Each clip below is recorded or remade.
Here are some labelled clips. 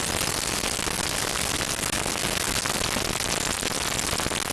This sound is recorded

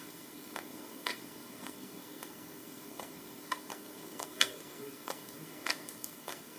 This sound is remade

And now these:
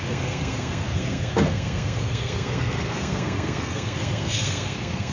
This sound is remade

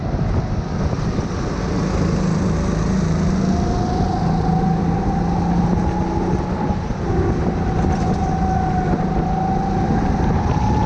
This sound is recorded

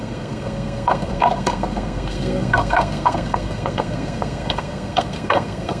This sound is remade